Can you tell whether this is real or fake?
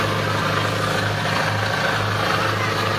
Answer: real